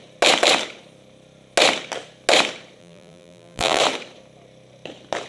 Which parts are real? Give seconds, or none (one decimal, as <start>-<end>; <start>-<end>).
0.0-2.8; 3.8-5.3